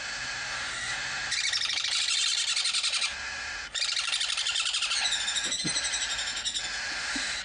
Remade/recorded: recorded